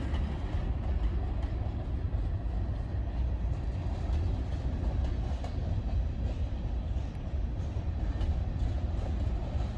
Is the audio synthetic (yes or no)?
no